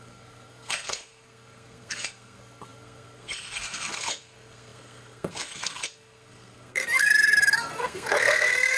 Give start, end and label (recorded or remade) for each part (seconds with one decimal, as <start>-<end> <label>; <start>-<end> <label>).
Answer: 0.0-8.8 remade